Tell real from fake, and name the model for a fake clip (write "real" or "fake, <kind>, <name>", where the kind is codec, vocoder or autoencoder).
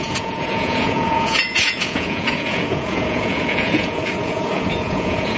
fake, vocoder, Vocos